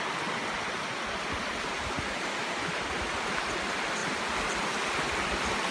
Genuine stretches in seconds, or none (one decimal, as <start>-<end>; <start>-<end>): 0.0-5.7